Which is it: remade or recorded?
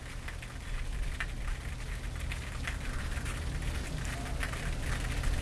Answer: recorded